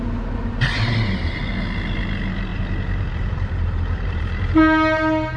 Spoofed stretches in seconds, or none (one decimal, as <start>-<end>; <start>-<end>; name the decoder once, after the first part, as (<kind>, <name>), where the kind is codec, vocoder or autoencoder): 0.4-1.4 (vocoder, BigVGAN v2); 2.5-4.6